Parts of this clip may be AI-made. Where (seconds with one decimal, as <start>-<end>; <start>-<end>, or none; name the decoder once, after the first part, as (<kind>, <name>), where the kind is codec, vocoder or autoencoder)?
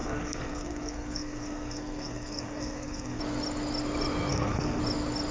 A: 0.0-3.2 (codec, SNAC); 4.3-4.8